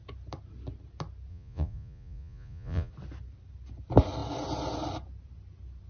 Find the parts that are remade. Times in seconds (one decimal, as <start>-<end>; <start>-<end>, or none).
1.3-2.9